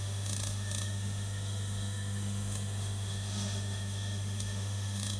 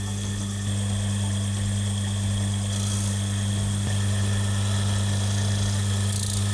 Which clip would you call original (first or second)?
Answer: second